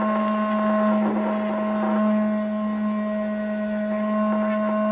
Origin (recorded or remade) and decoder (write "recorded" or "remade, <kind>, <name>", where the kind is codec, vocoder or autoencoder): recorded